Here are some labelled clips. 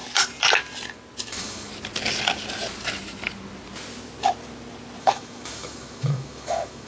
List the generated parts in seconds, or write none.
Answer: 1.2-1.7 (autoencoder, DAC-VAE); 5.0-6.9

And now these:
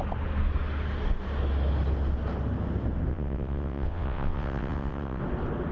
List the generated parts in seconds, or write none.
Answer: 3.1-5.2 (vocoder, WaveNeXt)

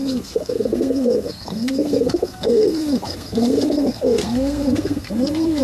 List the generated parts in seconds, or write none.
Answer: 0.0-5.6 (codec, SNAC)

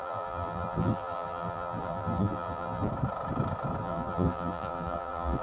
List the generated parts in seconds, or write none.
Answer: 0.0-2.9 (vocoder, BigVGAN v2); 3.8-5.4

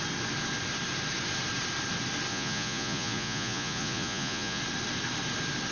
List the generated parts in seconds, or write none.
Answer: 2.3-4.6 (vocoder, Vocos)

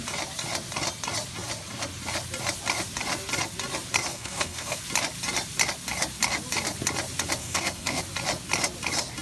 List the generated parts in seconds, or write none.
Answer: 4.1-4.8 (codec, SNAC); 7.4-8.0

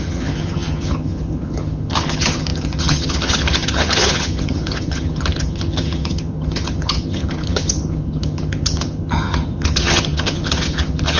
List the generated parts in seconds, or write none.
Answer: 0.0-11.2 (vocoder, HiFi-GAN)

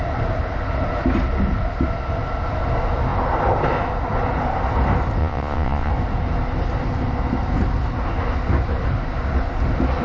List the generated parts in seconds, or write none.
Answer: 5.2-5.9 (vocoder, Vocos)